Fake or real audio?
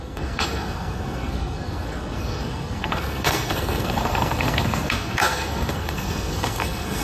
fake